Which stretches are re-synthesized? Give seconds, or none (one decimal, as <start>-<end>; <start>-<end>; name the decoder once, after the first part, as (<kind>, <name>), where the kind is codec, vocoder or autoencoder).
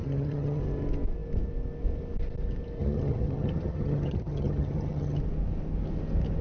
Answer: 0.0-0.6 (vocoder, HiFi-GAN); 2.8-5.2